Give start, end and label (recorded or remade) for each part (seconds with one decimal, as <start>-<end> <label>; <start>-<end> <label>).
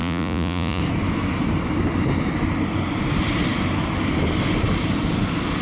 0.0-0.8 remade; 0.8-5.6 recorded